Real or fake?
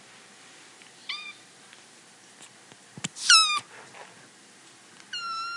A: real